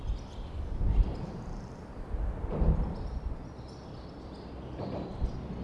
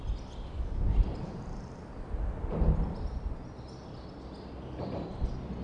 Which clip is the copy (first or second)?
first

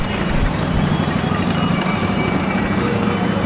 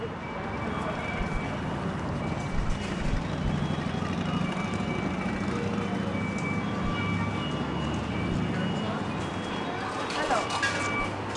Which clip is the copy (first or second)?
first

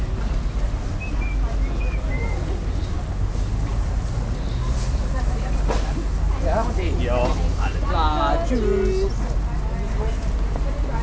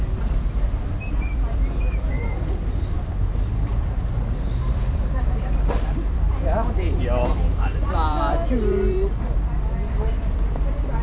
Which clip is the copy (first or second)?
second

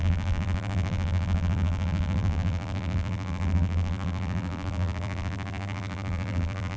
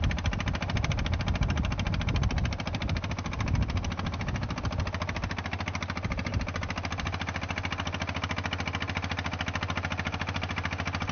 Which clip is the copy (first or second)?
first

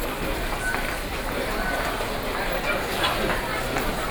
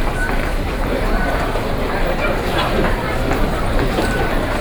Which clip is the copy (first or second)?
second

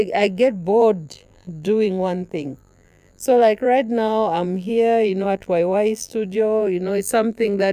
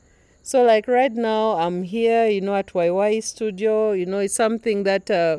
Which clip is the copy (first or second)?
first